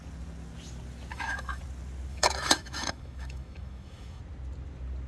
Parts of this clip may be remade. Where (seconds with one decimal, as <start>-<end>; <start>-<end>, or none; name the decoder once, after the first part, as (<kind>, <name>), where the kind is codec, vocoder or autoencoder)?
1.1-1.6 (autoencoder, DAC-VAE); 2.1-4.2